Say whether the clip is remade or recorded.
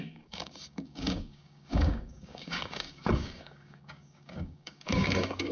remade